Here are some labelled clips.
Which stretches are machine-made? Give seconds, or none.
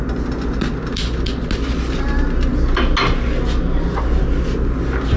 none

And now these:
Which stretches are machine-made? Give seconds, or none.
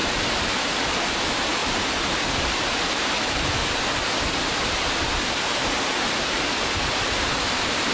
0.0-1.1 (vocoder, BigVGAN v2); 1.6-2.7; 3.6-5.2